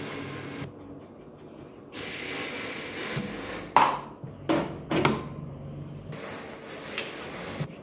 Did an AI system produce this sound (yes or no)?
no